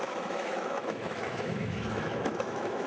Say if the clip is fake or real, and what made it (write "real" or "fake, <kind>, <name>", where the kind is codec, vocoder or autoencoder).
fake, autoencoder, DAC-VAE